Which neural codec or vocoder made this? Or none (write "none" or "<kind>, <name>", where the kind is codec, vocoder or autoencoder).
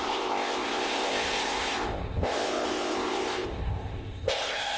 codec, ZipCodec